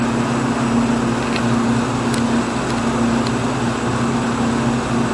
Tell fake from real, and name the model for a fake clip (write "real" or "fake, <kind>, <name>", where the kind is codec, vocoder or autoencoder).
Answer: real